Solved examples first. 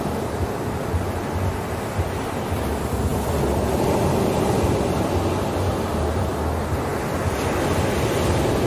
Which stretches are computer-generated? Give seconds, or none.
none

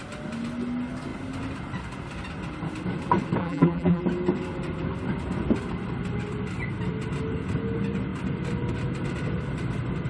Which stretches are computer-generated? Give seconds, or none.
3.4-4.0